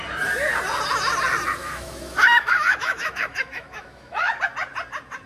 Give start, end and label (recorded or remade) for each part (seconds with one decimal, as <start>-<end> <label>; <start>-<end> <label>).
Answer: 0.0-1.6 recorded; 1.6-4.3 remade; 4.3-5.3 recorded